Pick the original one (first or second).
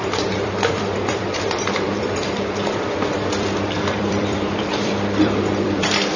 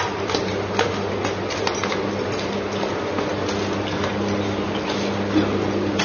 second